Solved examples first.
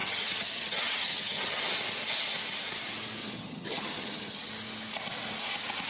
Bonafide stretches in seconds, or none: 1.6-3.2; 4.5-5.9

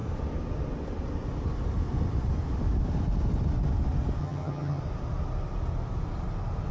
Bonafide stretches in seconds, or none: 0.0-4.2; 4.8-6.7

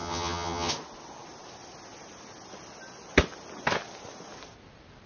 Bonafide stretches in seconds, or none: 0.7-5.1

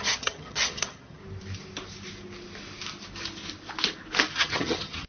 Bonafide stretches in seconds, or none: 1.2-4.3

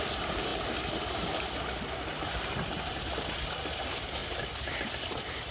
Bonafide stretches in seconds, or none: 0.0-5.5

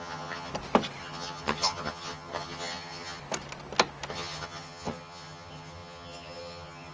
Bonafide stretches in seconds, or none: 0.5-1.0; 3.2-4.1

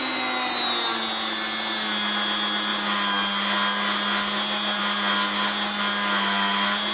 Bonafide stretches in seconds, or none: 0.0-6.9